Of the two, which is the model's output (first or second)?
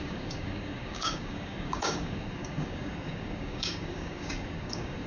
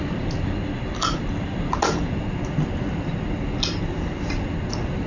first